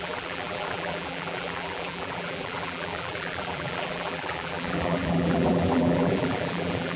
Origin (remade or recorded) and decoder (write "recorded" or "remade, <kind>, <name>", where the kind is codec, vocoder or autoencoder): remade, vocoder, BigVGAN v2